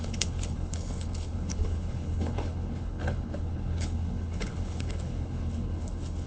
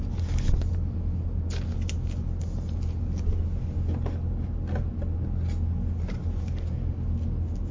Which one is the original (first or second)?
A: second